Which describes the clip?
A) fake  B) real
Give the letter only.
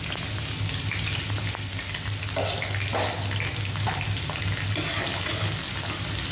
B